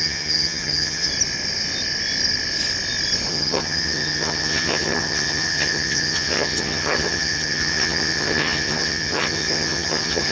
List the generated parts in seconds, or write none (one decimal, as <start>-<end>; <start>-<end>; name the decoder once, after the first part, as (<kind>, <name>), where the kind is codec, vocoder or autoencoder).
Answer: 0.0-1.1 (vocoder, HiFi-GAN); 3.3-10.3